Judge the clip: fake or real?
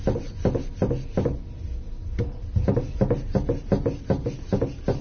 real